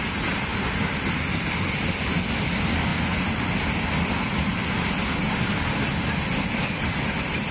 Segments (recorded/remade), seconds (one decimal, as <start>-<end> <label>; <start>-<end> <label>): 0.0-7.5 recorded